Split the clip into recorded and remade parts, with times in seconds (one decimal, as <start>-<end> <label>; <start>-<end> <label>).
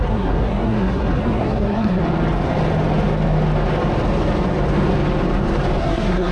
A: 0.0-2.0 remade; 2.0-5.8 recorded; 5.8-6.3 remade